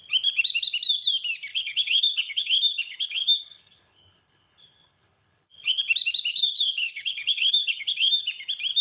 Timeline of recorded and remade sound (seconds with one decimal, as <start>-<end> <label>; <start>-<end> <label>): 0.0-1.5 recorded; 1.5-5.8 remade; 5.8-6.3 recorded; 6.3-8.1 remade; 8.1-8.8 recorded